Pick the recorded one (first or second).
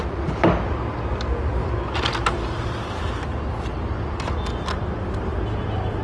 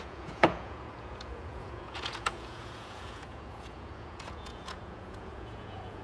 first